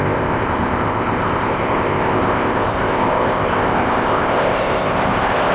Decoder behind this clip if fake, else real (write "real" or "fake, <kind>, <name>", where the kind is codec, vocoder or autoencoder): fake, codec, ZipCodec